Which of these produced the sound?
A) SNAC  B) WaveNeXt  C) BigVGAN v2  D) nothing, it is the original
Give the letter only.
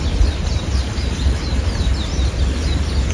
D